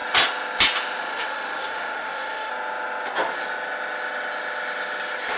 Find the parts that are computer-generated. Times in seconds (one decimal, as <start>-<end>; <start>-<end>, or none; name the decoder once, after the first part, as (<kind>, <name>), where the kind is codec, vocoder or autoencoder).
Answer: 1.0-2.5 (autoencoder, DAC-VAE)

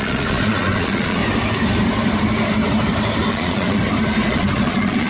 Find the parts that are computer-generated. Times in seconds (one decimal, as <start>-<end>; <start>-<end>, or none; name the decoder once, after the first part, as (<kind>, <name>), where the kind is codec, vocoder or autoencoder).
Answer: 0.0-1.2 (vocoder, Vocos); 3.3-3.8; 4.3-5.1